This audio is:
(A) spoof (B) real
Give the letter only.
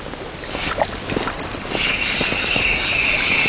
B